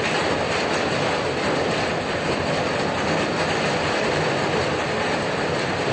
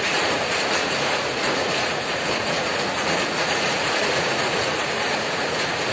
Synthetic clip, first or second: second